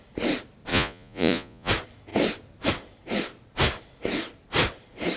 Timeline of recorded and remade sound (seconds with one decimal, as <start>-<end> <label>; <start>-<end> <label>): 0.0-0.7 recorded; 0.7-1.7 remade; 1.7-5.2 recorded